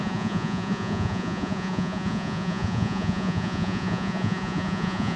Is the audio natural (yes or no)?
no